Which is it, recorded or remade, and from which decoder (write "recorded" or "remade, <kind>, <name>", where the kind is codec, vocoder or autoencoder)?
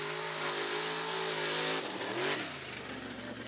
recorded